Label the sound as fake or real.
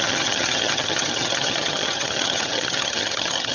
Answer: fake